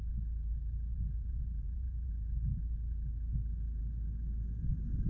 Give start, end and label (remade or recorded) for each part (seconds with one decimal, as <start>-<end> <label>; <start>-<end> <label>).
0.0-0.9 recorded; 0.9-2.1 remade; 2.1-5.1 recorded